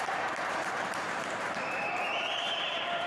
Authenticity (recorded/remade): remade